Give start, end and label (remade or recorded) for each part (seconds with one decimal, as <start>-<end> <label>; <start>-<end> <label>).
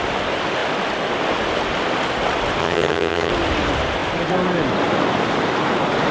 0.0-2.6 recorded; 2.6-3.3 remade; 3.3-6.1 recorded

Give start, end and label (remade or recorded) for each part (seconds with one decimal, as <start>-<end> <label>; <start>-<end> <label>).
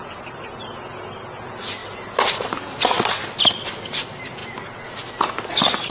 0.0-5.9 recorded